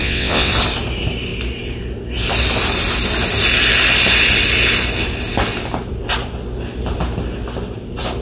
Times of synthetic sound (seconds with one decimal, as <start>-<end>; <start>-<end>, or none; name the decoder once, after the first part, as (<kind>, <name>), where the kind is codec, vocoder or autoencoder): 0.0-0.5 (vocoder, WaveNeXt)